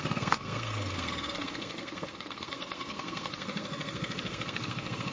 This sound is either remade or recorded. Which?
remade